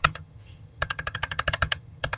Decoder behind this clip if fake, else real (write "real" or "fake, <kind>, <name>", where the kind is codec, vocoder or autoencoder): fake, vocoder, HiFi-GAN